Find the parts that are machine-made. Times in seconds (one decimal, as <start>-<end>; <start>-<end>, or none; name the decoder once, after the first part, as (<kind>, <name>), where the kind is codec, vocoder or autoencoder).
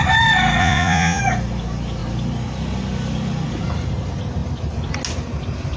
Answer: 0.6-1.2 (vocoder, Vocos)